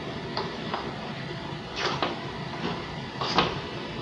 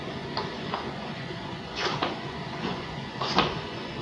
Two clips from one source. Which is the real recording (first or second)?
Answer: first